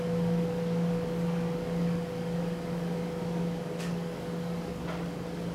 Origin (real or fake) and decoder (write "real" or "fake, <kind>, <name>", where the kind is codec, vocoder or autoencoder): fake, codec, DAC